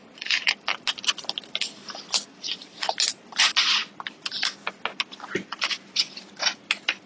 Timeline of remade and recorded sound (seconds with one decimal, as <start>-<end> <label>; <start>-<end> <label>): 0.0-0.5 remade; 0.5-2.3 recorded; 2.3-2.9 remade; 2.9-7.1 recorded